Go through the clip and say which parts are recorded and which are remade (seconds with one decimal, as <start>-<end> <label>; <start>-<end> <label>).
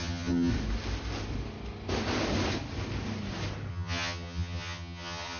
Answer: 0.0-0.5 remade; 0.5-3.7 recorded; 3.7-5.4 remade